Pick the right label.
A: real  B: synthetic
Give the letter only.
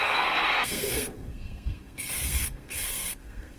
B